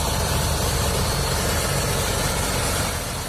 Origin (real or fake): fake